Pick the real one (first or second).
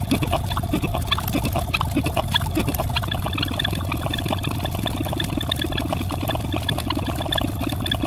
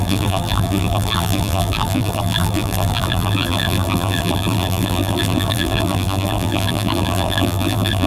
first